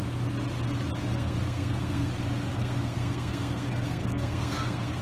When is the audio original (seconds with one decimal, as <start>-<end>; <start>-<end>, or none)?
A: 0.0-1.1; 2.1-2.5